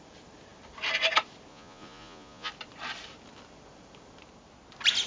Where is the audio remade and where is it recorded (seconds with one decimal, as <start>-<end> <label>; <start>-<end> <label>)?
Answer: 0.0-1.5 recorded; 1.5-2.5 remade; 2.5-5.1 recorded